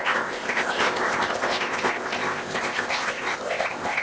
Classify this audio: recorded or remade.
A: remade